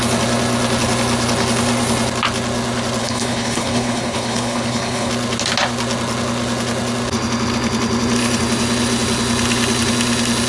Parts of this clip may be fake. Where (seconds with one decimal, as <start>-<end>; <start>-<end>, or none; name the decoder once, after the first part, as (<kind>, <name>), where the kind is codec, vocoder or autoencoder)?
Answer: 3.0-5.1 (codec, HILCodec)